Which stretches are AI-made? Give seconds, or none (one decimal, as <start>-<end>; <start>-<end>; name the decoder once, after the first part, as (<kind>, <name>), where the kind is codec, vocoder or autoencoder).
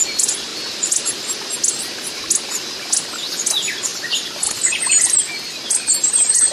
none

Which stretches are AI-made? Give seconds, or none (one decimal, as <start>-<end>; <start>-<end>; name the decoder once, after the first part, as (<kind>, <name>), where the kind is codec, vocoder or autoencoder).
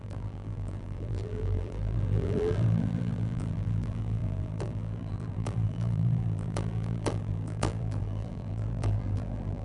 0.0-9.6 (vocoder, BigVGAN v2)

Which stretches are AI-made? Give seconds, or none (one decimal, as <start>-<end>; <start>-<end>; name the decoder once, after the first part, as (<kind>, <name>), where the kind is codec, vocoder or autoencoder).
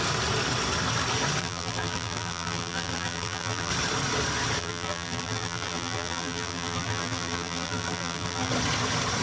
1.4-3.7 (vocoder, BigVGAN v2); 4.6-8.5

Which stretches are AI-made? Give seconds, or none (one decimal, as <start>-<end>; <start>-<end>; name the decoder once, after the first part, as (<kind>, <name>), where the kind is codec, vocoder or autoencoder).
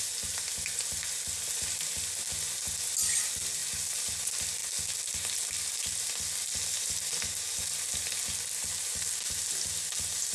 none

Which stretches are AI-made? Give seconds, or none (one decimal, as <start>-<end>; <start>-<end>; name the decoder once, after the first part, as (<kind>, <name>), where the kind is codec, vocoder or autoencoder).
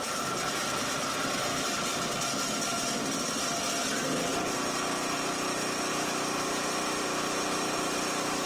0.0-1.5 (vocoder, BigVGAN v2); 2.8-3.6; 5.9-8.5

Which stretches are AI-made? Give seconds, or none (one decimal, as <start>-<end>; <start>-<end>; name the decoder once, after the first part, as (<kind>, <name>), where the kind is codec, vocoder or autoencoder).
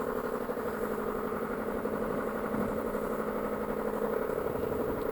1.3-3.3 (vocoder, BigVGAN v2)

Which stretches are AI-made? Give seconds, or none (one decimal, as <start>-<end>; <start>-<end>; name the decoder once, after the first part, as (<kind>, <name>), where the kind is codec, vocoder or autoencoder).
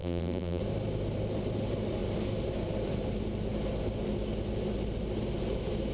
0.0-0.6 (vocoder, BigVGAN v2)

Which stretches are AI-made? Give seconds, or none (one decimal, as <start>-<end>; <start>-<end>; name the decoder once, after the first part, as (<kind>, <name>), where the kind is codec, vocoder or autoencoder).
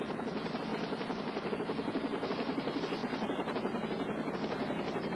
0.0-0.7 (vocoder, BigVGAN v2); 1.5-5.2